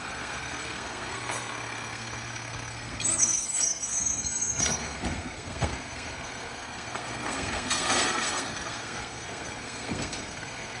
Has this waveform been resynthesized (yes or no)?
yes